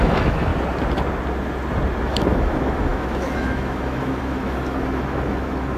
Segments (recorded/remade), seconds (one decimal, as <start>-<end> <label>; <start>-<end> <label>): 0.0-0.5 remade; 0.5-2.0 recorded; 2.0-5.8 remade